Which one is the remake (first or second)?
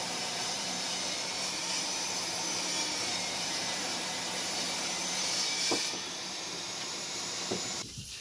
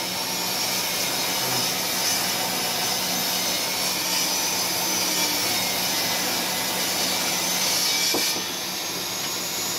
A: first